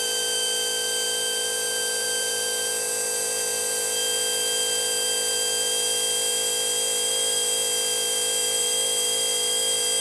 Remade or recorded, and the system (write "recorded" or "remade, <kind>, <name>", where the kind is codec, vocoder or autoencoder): remade, vocoder, BigVGAN v2